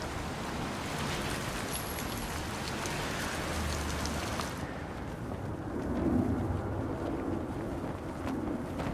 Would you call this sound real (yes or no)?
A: yes